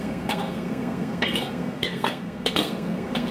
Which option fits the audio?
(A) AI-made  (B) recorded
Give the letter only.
A